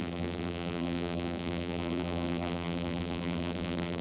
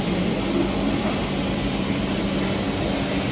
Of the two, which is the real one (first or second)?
second